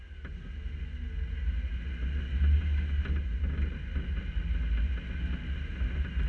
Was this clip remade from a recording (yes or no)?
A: no